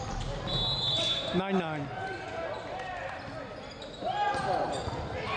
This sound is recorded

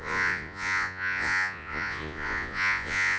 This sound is remade